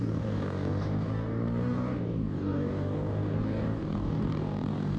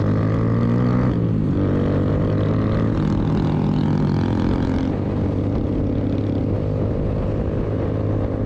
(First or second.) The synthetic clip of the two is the first